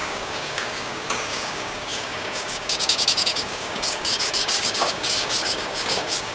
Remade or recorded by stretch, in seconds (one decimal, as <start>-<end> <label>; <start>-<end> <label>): 0.0-6.3 remade